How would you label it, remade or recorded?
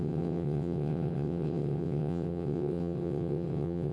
remade